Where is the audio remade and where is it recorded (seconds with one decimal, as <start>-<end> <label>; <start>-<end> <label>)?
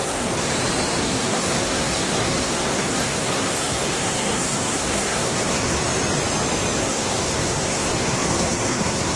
0.0-0.5 remade; 0.5-1.0 recorded; 1.0-5.8 remade; 5.8-6.8 recorded; 6.8-9.2 remade